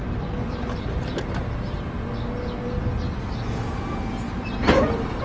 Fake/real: real